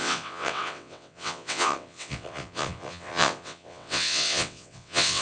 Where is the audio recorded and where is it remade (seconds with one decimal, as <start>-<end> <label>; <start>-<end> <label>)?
0.0-5.2 remade